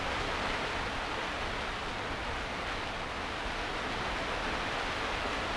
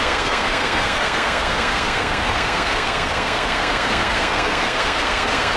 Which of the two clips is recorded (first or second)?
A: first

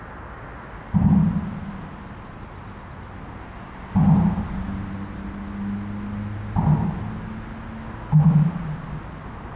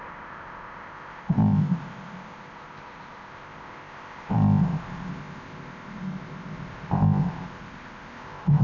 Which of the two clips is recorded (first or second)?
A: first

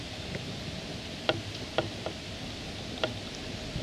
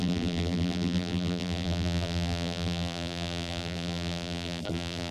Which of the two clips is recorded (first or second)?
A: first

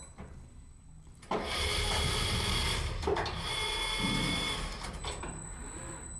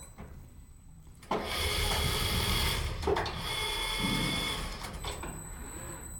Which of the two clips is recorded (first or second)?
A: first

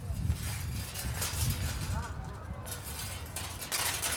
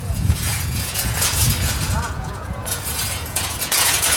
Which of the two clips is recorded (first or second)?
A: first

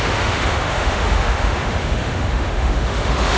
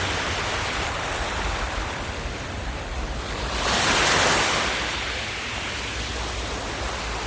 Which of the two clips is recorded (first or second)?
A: second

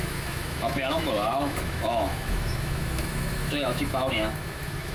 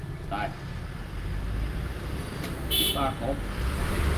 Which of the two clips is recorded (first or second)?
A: second